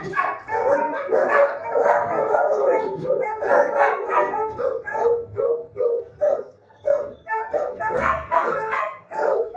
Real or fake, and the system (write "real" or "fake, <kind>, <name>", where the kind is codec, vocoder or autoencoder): fake, codec, SNAC